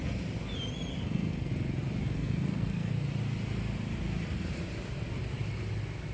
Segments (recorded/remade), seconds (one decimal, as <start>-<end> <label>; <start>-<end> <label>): 0.0-0.9 recorded; 0.9-1.5 remade; 1.5-2.0 recorded; 2.0-2.9 remade; 2.9-6.1 recorded